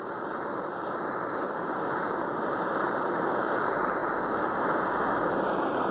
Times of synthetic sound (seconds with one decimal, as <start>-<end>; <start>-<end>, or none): 0.0-4.0; 5.2-5.9